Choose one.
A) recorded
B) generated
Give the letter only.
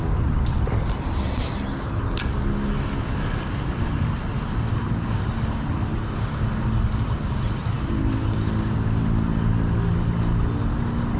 A